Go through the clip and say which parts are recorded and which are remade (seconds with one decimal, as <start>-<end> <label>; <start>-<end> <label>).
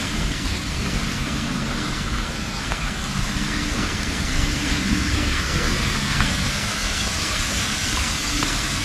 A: 0.0-8.8 remade